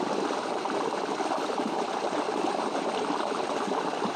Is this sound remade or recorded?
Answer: remade